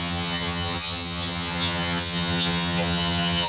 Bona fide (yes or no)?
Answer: no